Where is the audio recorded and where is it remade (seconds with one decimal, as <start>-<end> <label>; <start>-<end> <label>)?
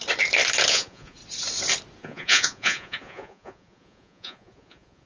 0.0-0.7 recorded; 0.7-1.2 remade; 1.2-2.0 recorded; 2.0-5.1 remade